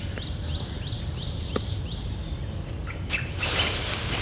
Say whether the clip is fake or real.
real